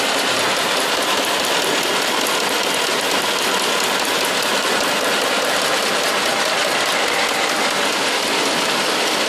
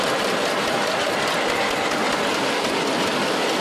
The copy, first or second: first